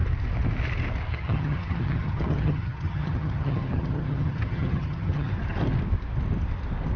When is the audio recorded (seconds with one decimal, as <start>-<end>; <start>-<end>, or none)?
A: 0.0-1.1; 5.3-7.0